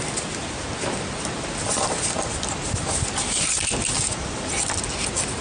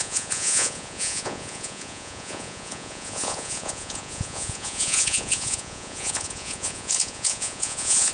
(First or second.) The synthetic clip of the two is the second